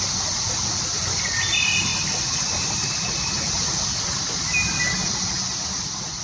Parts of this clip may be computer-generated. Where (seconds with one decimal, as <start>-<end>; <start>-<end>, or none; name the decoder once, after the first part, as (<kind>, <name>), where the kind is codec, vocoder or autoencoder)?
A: none